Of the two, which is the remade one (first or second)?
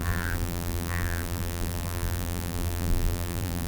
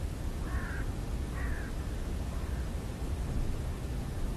first